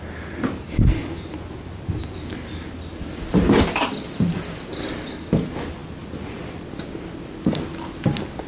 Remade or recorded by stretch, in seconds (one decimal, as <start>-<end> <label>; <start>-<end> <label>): 0.0-8.5 recorded